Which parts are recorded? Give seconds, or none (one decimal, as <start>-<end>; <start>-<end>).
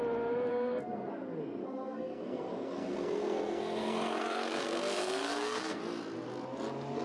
0.0-0.5; 1.1-1.6; 5.8-7.0